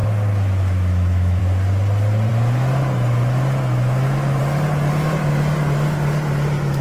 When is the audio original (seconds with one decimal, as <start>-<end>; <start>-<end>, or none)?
1.4-6.8